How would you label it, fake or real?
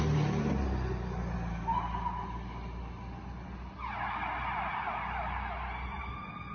real